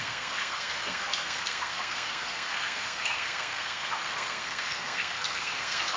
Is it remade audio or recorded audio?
remade